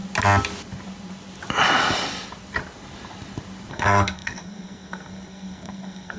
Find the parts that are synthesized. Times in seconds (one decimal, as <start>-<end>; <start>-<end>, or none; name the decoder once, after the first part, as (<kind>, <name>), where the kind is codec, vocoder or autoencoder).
3.7-6.2 (codec, SNAC)